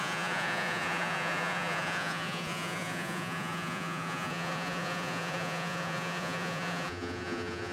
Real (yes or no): no